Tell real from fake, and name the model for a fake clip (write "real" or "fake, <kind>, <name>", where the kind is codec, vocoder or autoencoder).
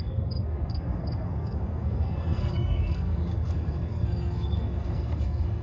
fake, codec, SNAC